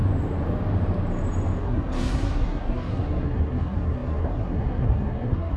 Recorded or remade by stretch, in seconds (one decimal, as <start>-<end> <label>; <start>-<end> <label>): 0.0-1.6 recorded; 1.6-5.6 remade